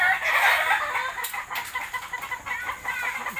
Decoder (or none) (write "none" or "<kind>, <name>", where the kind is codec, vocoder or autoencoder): none